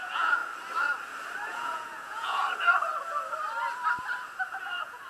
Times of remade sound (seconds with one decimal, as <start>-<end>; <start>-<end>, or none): 0.0-0.4; 1.5-2.4; 4.6-5.1